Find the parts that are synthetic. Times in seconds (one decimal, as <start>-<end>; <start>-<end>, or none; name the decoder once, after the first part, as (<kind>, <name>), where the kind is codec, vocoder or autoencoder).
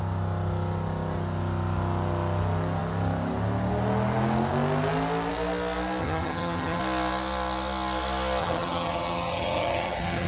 6.0-6.8 (vocoder, HiFi-GAN); 8.4-10.3